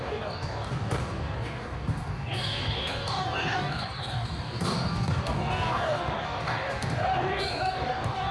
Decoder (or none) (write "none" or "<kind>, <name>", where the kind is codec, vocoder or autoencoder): codec, DAC